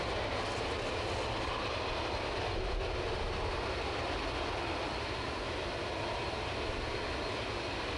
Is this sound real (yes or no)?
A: yes